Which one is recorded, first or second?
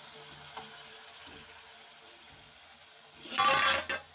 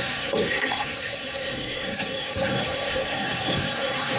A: first